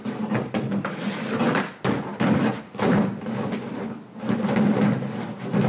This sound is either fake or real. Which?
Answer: real